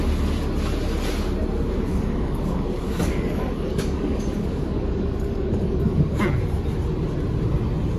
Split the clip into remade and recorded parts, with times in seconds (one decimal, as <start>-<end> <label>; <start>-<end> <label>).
0.0-1.9 recorded; 1.9-6.2 remade; 6.2-8.0 recorded